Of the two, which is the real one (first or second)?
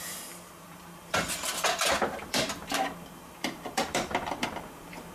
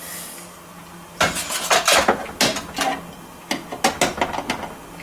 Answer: second